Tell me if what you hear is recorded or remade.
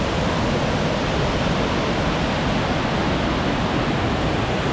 recorded